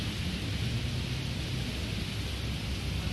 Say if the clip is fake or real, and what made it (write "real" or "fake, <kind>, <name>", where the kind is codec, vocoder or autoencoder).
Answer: real